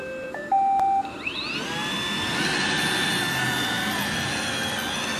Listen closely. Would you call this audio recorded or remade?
recorded